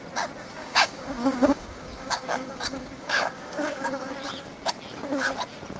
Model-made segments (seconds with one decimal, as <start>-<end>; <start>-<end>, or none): 0.6-4.1